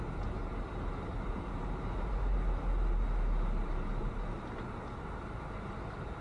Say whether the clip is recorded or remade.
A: recorded